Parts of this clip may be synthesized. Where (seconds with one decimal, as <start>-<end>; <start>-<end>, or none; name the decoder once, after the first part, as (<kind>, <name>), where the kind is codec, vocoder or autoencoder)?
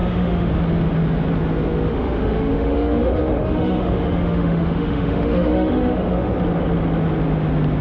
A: 0.0-0.5 (autoencoder, DAC-VAE); 1.9-6.3